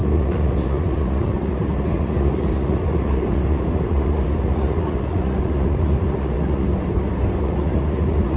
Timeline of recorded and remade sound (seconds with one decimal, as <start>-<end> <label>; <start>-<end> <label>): 0.0-6.7 remade; 6.7-7.4 recorded; 7.4-8.4 remade